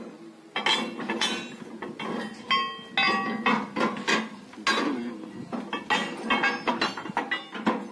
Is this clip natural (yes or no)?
yes